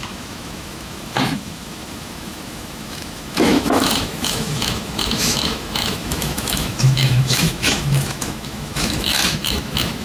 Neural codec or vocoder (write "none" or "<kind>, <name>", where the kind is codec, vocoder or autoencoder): autoencoder, DAC-VAE